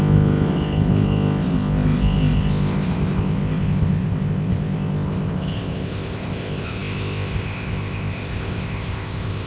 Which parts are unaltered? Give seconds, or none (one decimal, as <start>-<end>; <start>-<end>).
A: none